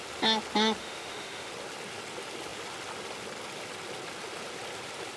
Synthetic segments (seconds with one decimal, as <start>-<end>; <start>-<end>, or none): 0.8-1.5